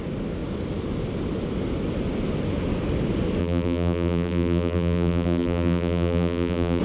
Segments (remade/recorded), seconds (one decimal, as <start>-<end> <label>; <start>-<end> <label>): 0.0-3.4 recorded; 3.4-6.8 remade